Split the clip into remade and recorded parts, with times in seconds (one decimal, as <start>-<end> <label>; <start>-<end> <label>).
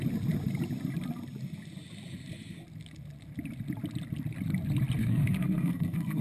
0.0-5.0 recorded; 5.0-6.2 remade